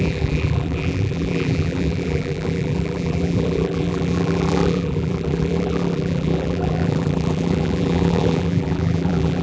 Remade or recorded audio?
remade